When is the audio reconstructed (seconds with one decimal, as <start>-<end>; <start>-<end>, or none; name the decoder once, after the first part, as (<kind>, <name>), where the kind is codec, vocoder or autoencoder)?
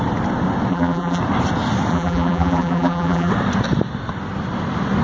0.7-1.2 (vocoder, BigVGAN v2); 1.9-3.3